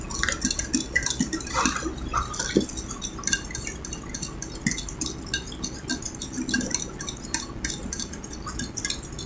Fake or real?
real